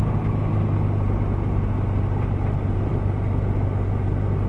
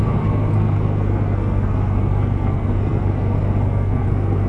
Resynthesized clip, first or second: second